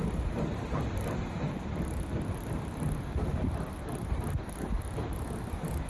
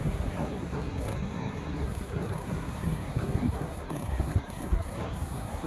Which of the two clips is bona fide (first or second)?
first